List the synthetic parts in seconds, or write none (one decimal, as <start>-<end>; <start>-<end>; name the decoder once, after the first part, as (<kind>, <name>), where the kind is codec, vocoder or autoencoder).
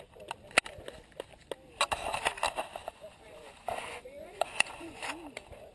2.8-5.1 (vocoder, Vocos)